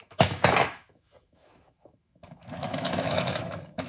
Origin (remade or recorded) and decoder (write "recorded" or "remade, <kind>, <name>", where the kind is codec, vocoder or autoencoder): remade, autoencoder, DAC-VAE